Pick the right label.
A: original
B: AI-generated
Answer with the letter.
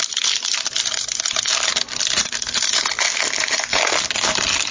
A